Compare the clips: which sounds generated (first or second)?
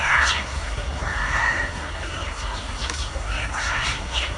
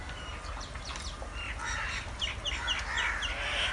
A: first